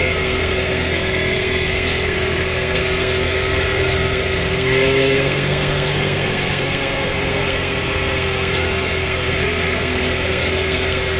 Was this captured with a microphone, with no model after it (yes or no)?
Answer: no